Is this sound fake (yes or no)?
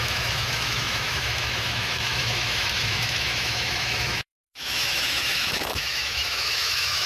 yes